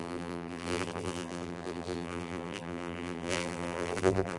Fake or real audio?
fake